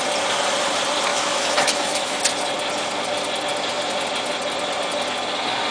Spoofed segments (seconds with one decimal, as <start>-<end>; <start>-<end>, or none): 1.1-2.2